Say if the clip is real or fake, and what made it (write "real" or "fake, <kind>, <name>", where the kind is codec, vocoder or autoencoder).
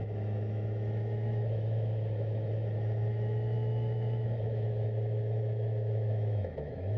fake, autoencoder, DAC-VAE